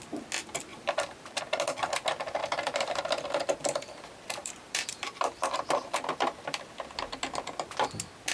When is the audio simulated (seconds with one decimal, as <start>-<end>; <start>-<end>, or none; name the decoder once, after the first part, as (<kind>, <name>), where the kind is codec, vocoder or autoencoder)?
0.7-1.4 (vocoder, BigVGAN v2); 2.4-3.0; 4.4-6.0